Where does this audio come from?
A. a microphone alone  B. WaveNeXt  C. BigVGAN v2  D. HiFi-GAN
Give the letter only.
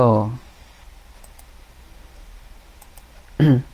A